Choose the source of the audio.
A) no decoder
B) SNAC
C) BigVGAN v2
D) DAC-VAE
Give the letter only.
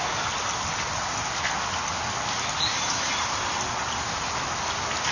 A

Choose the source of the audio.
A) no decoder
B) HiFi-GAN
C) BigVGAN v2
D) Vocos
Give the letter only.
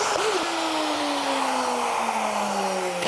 A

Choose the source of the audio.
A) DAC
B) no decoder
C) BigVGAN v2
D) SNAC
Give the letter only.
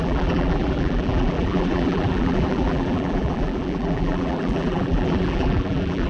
C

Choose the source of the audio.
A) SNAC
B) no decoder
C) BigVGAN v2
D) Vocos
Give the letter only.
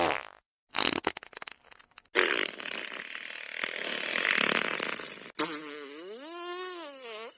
B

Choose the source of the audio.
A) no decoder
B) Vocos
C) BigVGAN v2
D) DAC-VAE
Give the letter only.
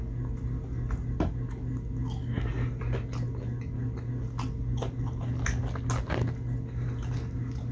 A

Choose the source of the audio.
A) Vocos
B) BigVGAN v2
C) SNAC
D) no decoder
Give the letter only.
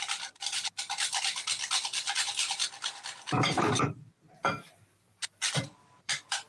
B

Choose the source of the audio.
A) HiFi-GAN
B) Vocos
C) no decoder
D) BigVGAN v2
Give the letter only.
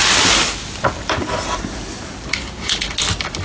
C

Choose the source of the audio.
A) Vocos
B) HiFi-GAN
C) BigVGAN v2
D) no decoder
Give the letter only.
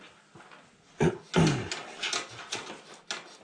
D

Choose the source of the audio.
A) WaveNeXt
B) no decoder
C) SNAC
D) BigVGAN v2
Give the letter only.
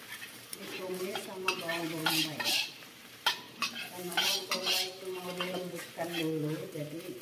D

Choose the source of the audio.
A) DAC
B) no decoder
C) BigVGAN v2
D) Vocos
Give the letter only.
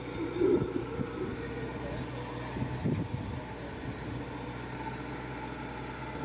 B